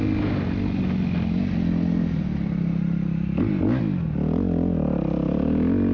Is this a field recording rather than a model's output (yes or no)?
yes